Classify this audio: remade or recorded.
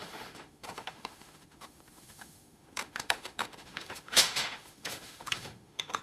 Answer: remade